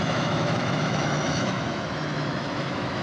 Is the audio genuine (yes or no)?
no